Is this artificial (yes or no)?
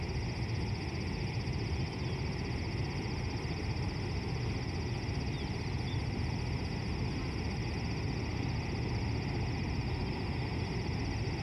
no